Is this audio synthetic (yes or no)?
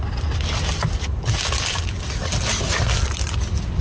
no